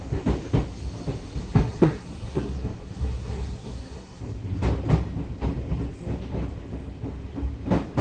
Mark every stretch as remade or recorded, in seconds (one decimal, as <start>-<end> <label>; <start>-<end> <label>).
0.0-1.4 recorded; 1.4-4.2 remade; 4.2-8.0 recorded

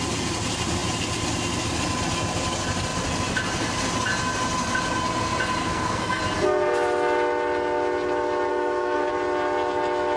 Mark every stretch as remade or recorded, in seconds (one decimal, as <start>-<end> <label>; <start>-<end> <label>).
0.0-5.6 recorded; 5.6-6.2 remade; 6.2-8.5 recorded; 8.5-9.1 remade; 9.1-10.2 recorded

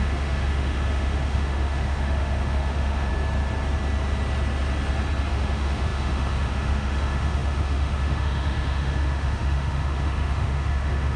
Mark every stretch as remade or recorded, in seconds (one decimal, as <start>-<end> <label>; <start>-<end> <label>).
0.0-3.1 remade; 3.1-5.3 recorded; 5.3-11.2 remade

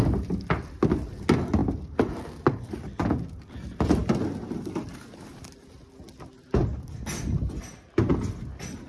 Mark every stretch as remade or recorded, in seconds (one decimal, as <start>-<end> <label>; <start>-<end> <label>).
0.0-8.9 recorded

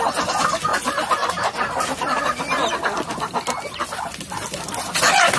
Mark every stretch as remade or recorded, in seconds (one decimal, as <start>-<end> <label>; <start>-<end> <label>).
0.0-5.4 recorded

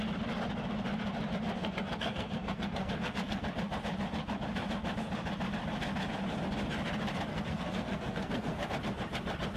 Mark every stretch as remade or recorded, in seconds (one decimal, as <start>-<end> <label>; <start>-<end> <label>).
0.0-1.6 recorded; 1.6-3.4 remade; 3.4-7.3 recorded; 7.3-8.7 remade; 8.7-9.6 recorded